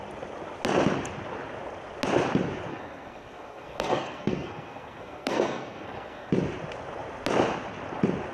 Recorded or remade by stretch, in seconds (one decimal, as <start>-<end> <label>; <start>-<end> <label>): 0.0-2.7 recorded; 2.7-6.3 remade; 6.3-8.3 recorded